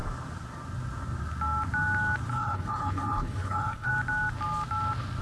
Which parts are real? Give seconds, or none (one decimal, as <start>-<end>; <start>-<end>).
0.0-2.3; 3.9-5.2